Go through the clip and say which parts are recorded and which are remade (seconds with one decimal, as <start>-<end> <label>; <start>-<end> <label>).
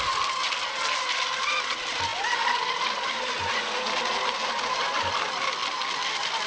0.0-6.5 recorded